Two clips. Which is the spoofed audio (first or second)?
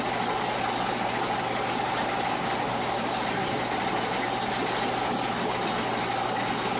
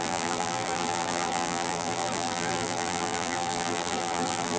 second